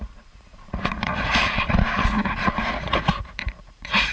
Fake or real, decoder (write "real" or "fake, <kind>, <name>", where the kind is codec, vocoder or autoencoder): fake, vocoder, Vocos